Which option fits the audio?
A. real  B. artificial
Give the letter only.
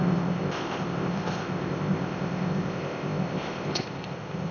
B